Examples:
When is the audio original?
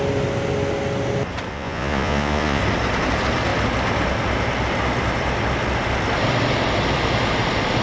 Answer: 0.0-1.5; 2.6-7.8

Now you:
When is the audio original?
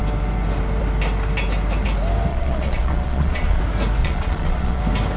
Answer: 0.0-2.3; 3.6-4.0; 4.8-5.2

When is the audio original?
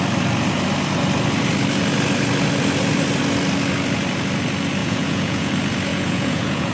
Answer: 0.0-4.8; 5.5-5.9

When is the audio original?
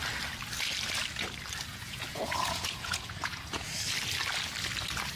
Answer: 0.0-1.7; 3.7-5.2